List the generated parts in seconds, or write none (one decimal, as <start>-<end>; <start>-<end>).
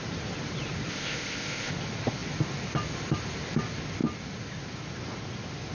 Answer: 0.9-1.7